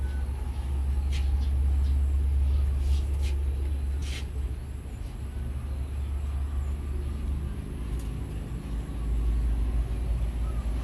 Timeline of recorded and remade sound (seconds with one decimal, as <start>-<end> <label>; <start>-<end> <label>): 0.0-10.8 recorded